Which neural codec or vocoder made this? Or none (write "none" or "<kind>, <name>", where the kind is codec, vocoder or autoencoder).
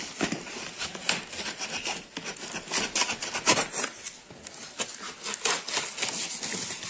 none